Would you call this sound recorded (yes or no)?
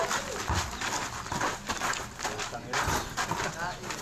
yes